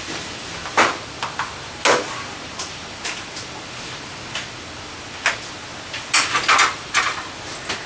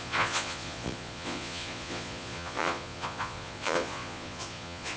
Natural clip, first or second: first